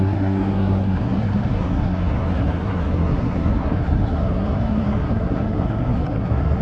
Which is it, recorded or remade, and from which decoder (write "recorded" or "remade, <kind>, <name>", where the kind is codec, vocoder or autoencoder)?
remade, codec, SNAC